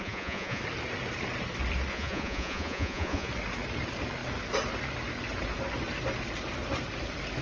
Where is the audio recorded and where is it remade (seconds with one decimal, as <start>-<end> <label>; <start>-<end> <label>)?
0.0-0.6 remade; 0.6-1.9 recorded; 1.9-3.3 remade; 3.3-7.4 recorded